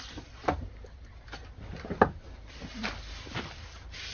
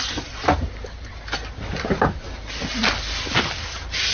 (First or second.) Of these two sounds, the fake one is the first